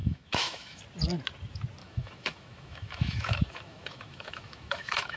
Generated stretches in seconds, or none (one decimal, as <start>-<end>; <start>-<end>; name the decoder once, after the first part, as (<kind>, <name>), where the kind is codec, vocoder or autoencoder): 0.0-0.8 (autoencoder, DAC-VAE); 1.8-5.2